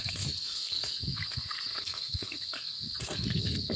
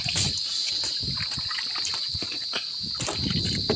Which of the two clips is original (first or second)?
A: second